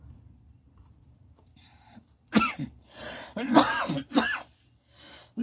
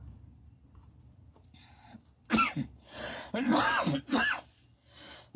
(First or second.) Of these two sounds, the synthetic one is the first